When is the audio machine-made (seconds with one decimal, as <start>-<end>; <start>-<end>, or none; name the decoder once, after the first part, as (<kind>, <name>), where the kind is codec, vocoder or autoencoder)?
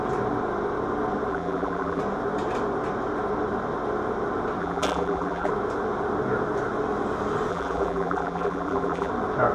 1.3-2.0 (vocoder, BigVGAN v2); 4.6-5.5; 7.5-9.1